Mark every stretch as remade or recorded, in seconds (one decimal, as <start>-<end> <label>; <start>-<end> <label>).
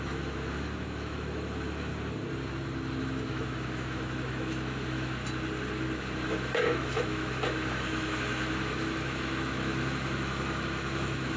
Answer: 0.0-1.9 remade; 1.9-3.0 recorded; 3.0-5.2 remade; 5.2-6.0 recorded; 6.0-11.4 remade